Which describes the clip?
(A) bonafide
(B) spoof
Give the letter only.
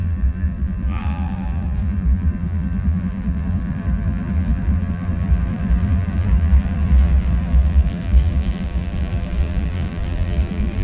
B